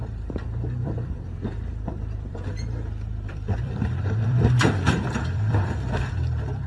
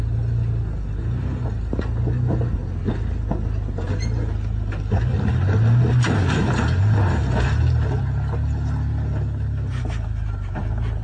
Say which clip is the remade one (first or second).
first